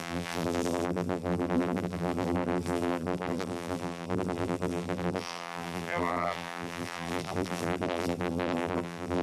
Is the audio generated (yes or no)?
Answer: yes